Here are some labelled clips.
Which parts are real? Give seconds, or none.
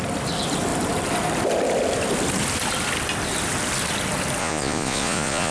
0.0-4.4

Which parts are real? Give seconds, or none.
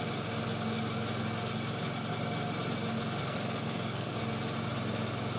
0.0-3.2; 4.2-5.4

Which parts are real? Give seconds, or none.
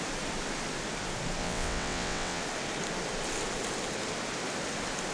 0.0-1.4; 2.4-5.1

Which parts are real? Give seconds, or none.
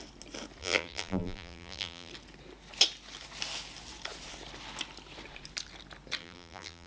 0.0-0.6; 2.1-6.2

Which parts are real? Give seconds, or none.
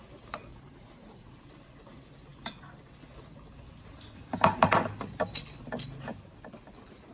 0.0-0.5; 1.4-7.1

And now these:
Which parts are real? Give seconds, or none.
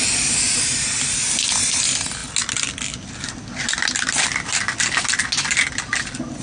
0.0-6.4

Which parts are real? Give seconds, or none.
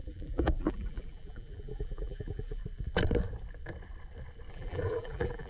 2.6-4.5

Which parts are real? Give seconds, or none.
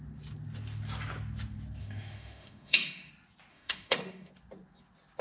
0.0-1.8; 3.1-3.5; 4.3-5.2